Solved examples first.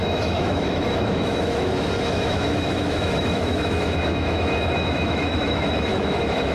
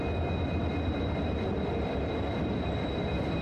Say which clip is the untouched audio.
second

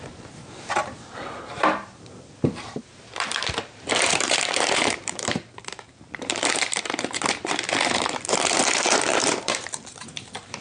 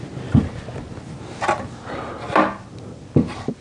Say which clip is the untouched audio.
second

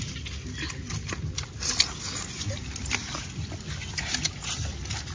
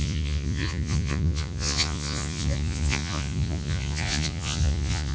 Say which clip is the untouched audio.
first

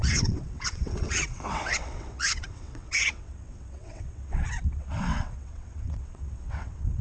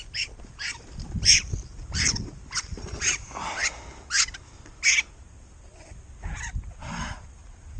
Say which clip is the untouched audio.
second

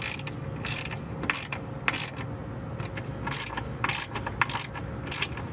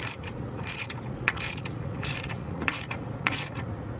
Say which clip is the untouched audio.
first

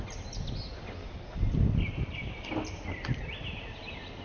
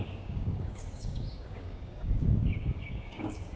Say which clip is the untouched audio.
first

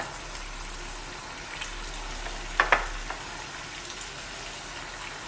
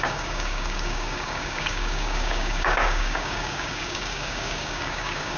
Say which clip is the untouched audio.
first